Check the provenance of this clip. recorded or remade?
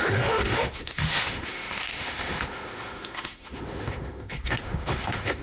remade